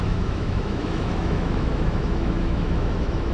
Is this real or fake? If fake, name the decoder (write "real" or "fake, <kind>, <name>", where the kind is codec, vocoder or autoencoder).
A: fake, autoencoder, DAC-VAE